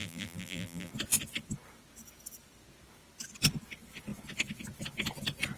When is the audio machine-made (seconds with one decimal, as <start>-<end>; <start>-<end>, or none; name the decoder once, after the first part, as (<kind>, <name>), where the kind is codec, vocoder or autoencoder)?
0.0-0.9 (vocoder, BigVGAN v2)